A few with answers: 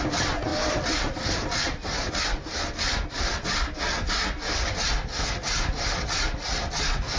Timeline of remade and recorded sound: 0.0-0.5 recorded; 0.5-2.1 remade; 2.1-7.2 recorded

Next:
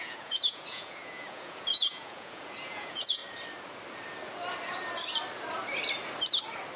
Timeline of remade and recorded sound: 0.0-3.2 remade; 3.2-6.8 recorded

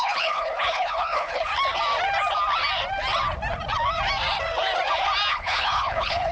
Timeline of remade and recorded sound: 0.0-1.5 remade; 1.5-5.3 recorded; 5.3-6.3 remade